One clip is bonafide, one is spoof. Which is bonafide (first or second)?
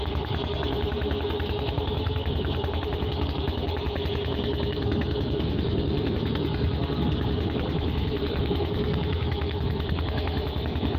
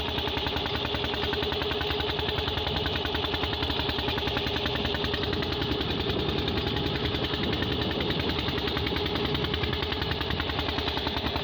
second